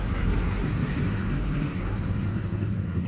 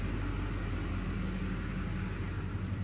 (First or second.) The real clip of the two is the second